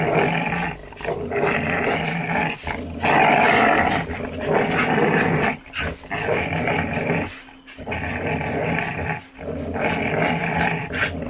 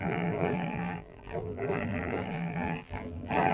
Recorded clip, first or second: first